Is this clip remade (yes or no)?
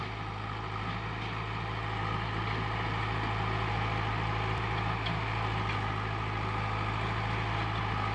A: no